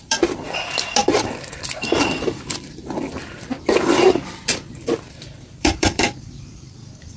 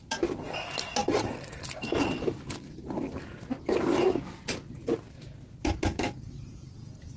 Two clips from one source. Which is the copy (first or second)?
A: first